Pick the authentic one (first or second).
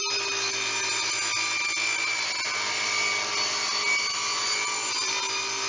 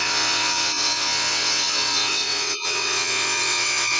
first